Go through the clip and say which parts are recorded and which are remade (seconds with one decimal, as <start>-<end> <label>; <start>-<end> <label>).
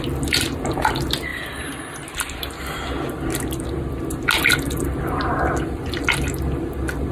0.0-7.1 recorded